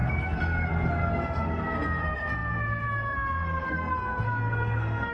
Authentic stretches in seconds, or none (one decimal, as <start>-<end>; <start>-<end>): none